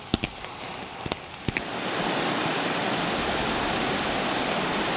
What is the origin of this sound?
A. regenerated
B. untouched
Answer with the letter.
B